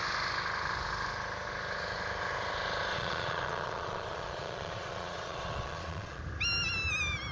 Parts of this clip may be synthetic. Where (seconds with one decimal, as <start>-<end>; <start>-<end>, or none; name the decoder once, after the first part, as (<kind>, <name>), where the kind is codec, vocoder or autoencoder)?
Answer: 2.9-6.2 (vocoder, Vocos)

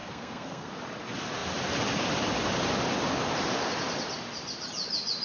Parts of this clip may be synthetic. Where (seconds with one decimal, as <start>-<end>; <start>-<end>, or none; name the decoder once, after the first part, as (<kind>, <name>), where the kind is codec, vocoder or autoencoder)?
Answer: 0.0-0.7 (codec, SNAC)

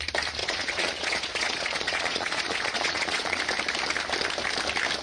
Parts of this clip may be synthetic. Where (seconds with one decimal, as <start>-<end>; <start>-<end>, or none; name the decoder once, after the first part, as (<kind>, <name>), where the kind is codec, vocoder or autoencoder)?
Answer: 0.4-3.4 (vocoder, Vocos)

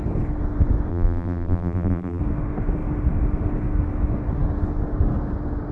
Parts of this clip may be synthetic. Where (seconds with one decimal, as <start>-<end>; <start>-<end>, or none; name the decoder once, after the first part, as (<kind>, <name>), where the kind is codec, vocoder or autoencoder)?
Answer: 0.9-2.2 (vocoder, BigVGAN v2)

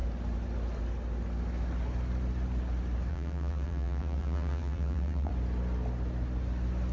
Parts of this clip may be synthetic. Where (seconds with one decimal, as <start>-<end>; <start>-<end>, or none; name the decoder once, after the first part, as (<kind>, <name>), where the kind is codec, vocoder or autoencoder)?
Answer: 3.1-5.3 (vocoder, BigVGAN v2)

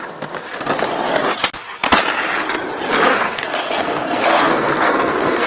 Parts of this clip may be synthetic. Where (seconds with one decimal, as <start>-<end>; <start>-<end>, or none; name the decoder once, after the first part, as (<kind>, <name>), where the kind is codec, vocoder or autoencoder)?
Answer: 3.1-5.5 (codec, SNAC)